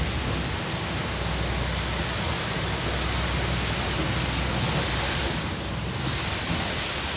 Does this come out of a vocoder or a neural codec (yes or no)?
no